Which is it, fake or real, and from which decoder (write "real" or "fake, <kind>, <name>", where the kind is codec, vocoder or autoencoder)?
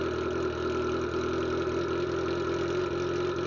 real